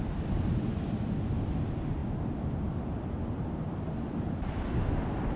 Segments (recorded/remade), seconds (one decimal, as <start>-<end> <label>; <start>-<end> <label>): 0.0-5.4 recorded